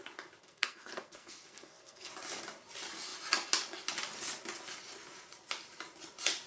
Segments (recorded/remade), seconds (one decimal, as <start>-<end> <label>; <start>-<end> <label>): 0.0-0.4 recorded; 0.4-2.1 remade; 2.1-6.5 recorded